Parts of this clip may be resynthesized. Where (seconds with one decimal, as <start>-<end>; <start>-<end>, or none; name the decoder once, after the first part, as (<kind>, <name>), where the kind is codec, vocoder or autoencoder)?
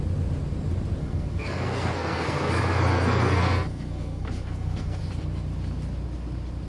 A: 1.0-5.0 (codec, SNAC)